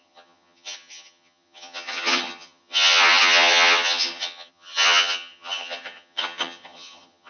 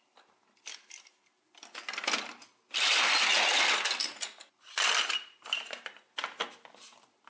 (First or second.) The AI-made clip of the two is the first